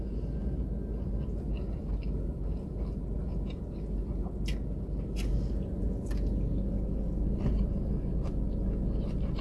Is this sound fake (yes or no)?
no